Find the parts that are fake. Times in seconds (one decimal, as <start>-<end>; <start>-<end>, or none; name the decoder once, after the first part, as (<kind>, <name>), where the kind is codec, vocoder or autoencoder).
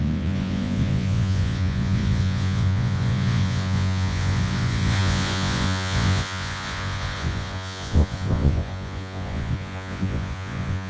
0.0-10.9 (vocoder, Vocos)